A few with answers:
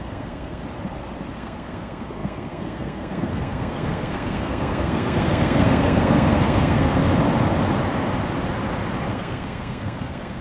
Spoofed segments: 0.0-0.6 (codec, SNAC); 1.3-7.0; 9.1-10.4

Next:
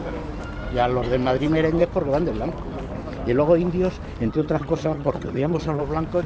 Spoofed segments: 4.3-5.8 (vocoder, HiFi-GAN)

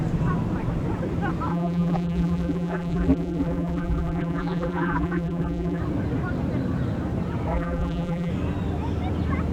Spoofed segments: 1.5-5.8 (vocoder, BigVGAN v2); 7.5-8.3

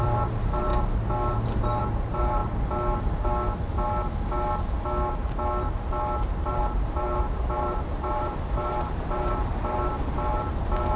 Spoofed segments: 0.0-0.7 (vocoder, BigVGAN v2); 1.8-2.4; 6.5-11.0

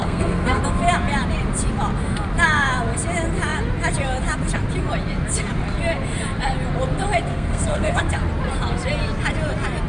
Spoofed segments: 0.0-0.6 (codec, SNAC); 7.3-8.0

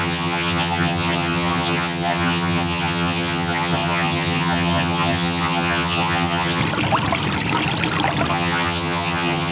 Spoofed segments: 0.0-6.6 (vocoder, HiFi-GAN); 8.3-9.5